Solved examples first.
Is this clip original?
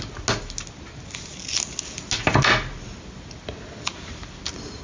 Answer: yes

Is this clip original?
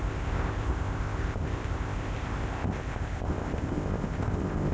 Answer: no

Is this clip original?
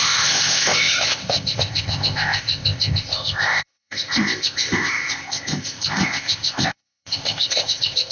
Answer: no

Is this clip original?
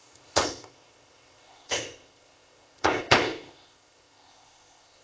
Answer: no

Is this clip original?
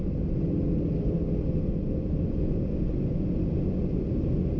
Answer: yes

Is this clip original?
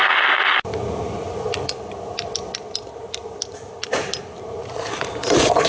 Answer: yes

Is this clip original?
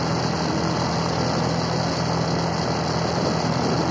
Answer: yes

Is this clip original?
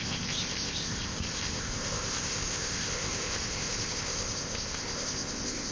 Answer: no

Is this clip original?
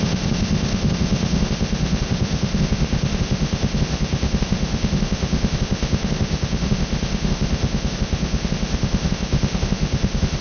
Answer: no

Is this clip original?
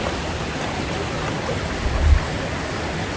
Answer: yes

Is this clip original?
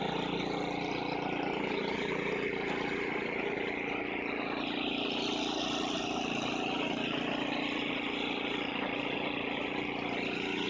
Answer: yes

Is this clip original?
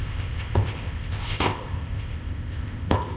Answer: no